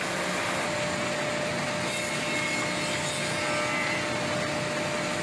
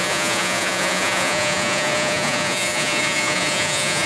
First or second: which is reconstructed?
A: second